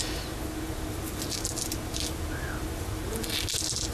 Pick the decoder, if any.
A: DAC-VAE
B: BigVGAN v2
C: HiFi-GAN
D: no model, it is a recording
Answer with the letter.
D